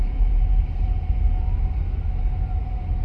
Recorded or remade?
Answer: recorded